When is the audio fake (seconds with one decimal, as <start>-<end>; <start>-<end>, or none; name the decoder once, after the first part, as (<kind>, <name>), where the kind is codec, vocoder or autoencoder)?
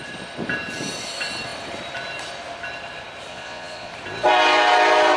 3.3-3.9 (vocoder, Vocos)